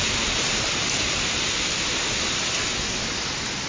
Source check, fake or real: real